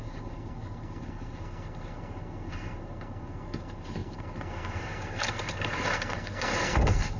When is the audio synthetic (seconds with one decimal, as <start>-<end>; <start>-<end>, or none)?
0.0-7.2